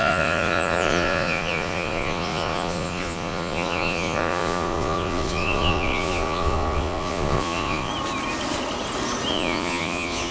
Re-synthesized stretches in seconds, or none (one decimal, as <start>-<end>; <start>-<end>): 0.0-7.9; 9.3-10.3